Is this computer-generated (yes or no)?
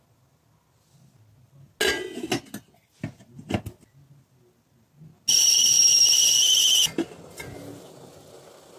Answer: no